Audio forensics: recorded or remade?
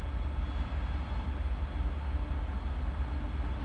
recorded